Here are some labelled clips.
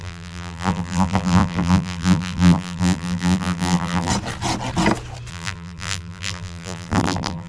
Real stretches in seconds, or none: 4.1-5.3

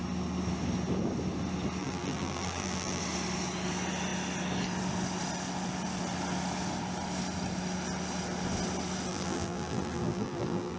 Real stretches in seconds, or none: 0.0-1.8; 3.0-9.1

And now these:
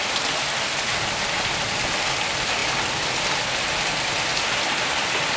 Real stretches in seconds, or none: 0.0-4.3

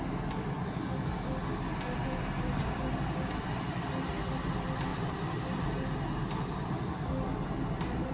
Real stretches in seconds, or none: 0.0-2.0; 3.3-4.9; 5.8-8.1